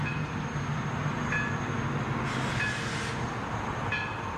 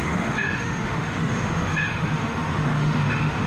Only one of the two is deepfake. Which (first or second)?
second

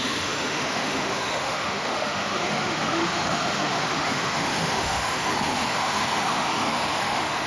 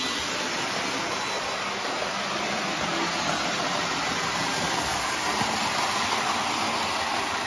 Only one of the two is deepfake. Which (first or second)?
first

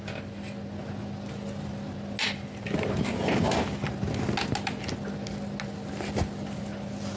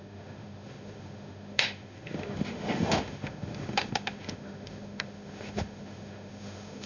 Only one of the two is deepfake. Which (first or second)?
second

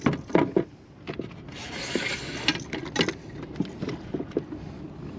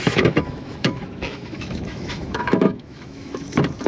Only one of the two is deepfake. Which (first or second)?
second